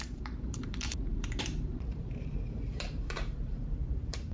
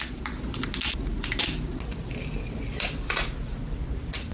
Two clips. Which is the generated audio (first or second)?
first